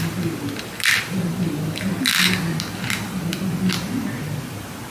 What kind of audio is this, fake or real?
real